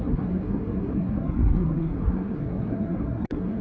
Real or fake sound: fake